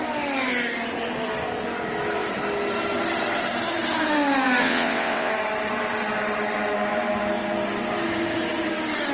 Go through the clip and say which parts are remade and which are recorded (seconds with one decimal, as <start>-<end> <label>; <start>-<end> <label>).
0.0-4.6 recorded; 4.6-5.3 remade; 5.3-9.1 recorded